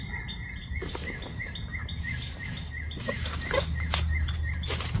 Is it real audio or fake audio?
real